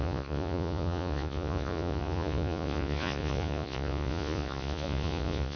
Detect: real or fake fake